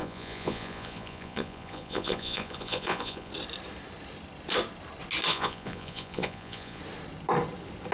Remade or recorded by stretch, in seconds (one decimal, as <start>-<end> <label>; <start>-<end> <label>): 0.0-3.3 remade; 3.3-5.3 recorded; 5.3-6.8 remade; 6.8-7.9 recorded